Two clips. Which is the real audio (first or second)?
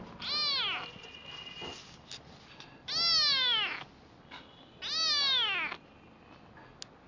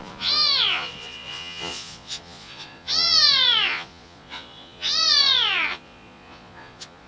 first